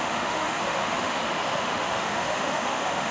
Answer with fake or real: fake